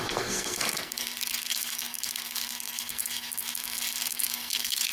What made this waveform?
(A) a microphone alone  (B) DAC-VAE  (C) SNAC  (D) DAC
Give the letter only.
C